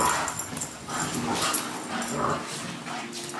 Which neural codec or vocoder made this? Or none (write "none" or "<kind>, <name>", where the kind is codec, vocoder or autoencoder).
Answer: none